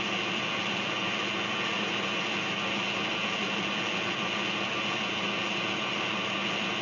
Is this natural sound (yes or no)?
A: yes